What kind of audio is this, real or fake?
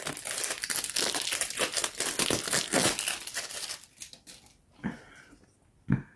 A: real